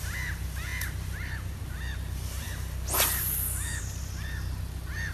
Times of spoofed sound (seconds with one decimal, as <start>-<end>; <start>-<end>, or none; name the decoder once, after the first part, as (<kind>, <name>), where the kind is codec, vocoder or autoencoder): none